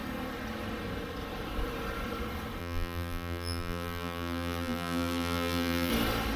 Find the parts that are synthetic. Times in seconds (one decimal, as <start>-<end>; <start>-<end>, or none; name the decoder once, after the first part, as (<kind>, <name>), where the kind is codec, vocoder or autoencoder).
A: 2.6-5.9 (vocoder, BigVGAN v2)